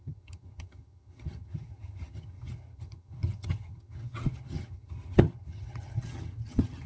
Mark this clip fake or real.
fake